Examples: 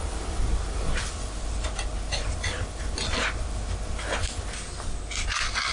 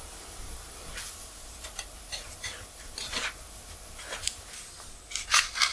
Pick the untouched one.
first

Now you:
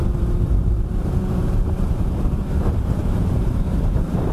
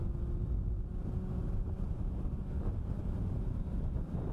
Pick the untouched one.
second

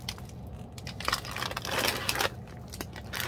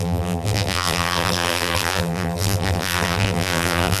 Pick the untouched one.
first